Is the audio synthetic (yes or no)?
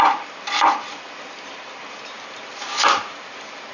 yes